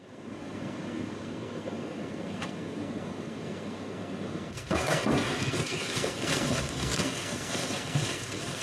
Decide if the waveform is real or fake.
fake